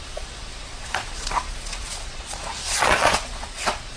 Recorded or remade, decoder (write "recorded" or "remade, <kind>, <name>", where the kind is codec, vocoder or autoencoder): remade, vocoder, Vocos